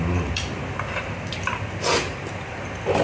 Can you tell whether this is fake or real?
real